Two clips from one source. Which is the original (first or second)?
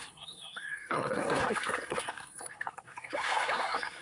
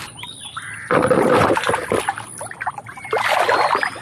second